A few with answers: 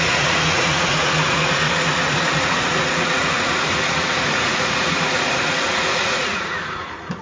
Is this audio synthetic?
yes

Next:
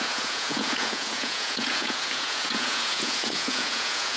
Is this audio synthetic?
yes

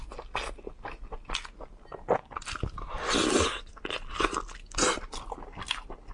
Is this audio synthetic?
no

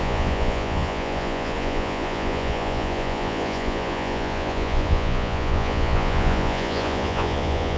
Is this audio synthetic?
yes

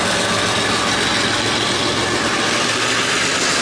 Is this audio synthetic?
no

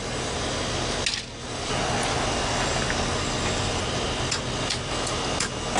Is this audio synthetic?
no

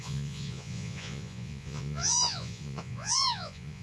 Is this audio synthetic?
yes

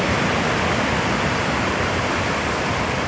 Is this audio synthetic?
no